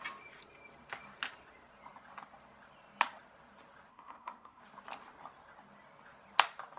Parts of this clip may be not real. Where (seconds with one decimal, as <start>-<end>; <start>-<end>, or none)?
3.9-4.6